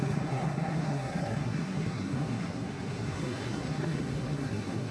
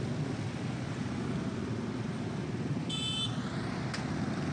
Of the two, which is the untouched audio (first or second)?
second